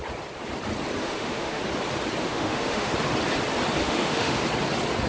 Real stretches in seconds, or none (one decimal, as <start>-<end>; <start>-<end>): 0.0-1.0; 1.6-2.2; 2.9-3.8; 4.4-5.1

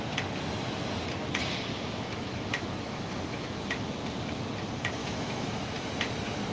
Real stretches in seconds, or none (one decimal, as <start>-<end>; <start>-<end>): 0.0-1.7; 3.9-5.0; 5.9-6.5

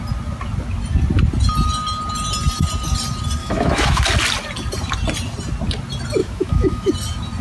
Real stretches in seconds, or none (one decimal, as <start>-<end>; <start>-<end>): 0.0-3.4; 4.0-6.2; 6.9-7.4

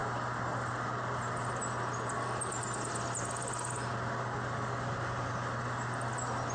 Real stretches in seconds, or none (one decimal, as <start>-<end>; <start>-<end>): 0.0-6.5